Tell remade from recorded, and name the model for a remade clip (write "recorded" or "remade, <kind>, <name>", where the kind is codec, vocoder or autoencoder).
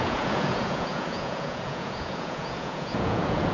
remade, vocoder, Vocos